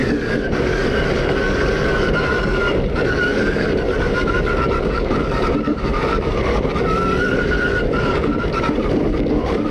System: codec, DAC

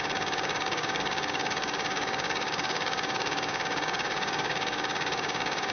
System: codec, DAC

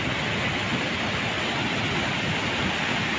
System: none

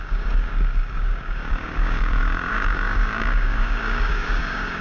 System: codec, DAC